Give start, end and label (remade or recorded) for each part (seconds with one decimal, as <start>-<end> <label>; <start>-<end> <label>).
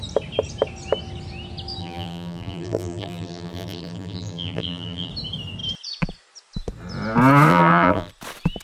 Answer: 0.0-1.8 recorded; 1.8-5.1 remade; 5.1-7.5 recorded; 7.5-8.1 remade; 8.1-8.6 recorded